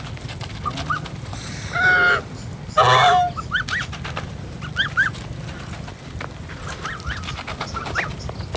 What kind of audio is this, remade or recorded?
recorded